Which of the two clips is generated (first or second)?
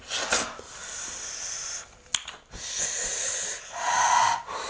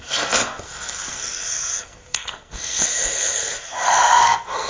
second